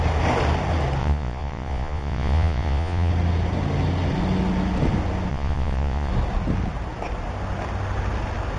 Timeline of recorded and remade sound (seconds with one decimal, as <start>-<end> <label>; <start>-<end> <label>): 0.0-1.0 recorded; 1.0-3.1 remade; 3.1-5.3 recorded; 5.3-6.1 remade; 6.1-8.6 recorded